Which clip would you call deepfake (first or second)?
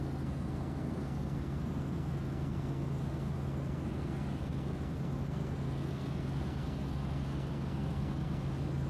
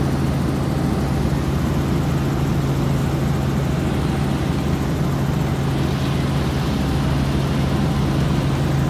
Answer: first